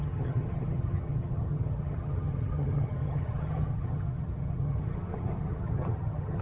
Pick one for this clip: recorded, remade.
remade